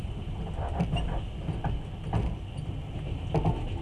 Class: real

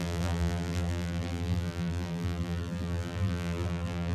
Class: fake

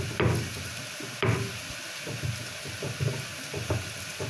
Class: real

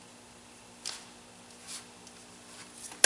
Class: real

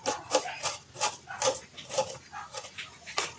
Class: real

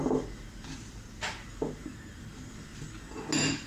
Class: real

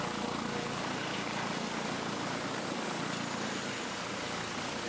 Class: real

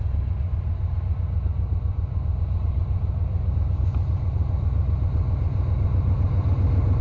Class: real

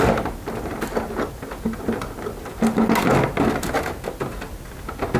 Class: real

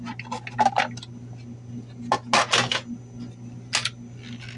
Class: real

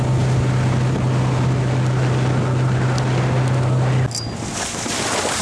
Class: real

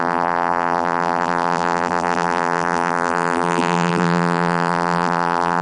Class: fake